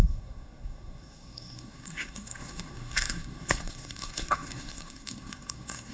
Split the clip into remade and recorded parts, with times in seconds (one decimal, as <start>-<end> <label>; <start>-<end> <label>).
0.0-5.9 remade